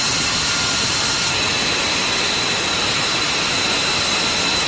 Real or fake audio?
real